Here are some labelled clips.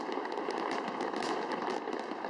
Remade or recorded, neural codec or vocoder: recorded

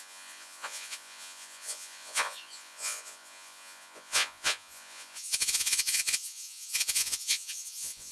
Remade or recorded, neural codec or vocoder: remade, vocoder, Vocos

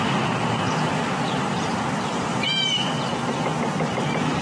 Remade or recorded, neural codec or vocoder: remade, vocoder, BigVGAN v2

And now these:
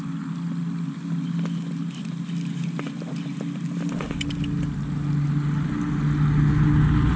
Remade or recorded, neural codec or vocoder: recorded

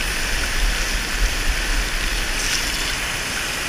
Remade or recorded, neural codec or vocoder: recorded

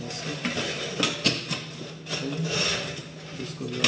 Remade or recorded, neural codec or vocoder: recorded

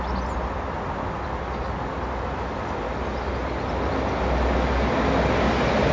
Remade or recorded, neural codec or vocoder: recorded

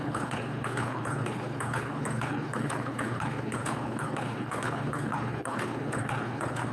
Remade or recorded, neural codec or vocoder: remade, codec, HILCodec